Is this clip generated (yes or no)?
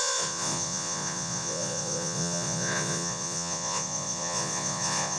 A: yes